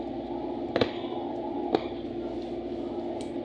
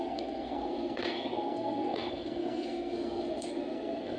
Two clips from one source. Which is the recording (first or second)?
first